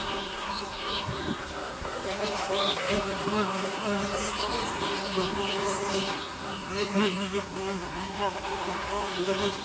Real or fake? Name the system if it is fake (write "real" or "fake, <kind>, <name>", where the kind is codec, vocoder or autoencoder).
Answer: fake, codec, SNAC